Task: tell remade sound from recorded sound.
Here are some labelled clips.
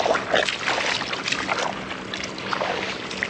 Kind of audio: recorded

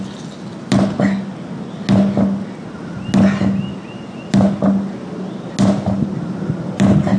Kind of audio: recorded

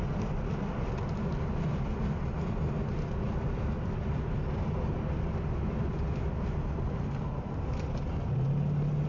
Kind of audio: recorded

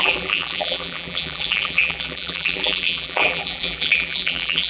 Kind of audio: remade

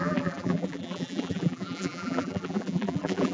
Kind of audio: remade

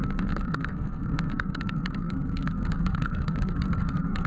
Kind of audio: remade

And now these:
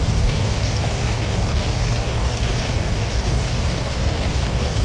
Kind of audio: remade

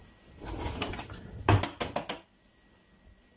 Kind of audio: recorded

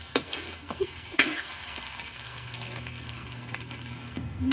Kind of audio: remade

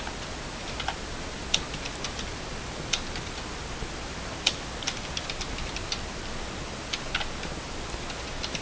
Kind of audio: recorded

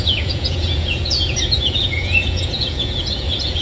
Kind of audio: remade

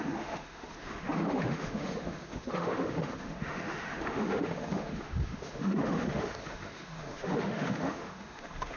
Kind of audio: remade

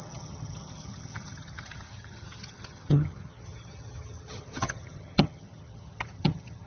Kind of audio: remade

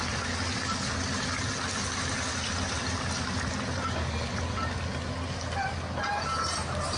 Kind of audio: recorded